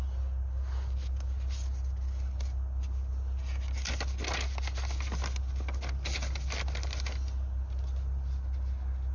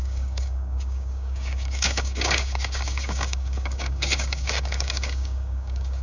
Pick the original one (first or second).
first